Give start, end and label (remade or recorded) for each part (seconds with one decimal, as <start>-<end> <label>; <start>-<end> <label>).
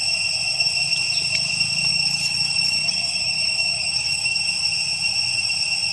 0.0-1.9 recorded; 1.9-4.4 remade; 4.4-5.9 recorded